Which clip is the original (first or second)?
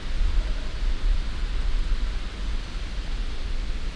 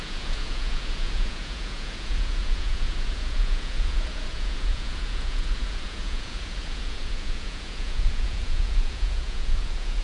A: first